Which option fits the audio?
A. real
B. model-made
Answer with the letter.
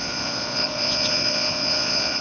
B